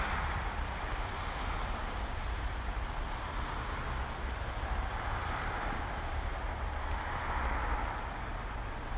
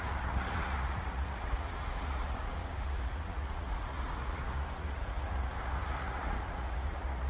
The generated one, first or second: second